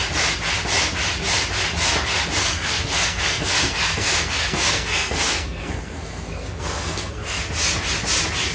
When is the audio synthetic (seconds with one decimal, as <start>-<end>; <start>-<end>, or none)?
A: 2.4-7.4